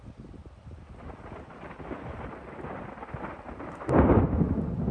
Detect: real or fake real